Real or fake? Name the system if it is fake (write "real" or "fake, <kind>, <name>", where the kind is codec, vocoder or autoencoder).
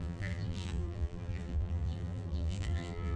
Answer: fake, vocoder, BigVGAN v2